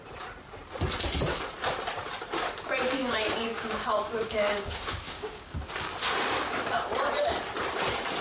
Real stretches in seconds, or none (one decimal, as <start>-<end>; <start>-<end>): 0.0-3.0; 5.6-8.2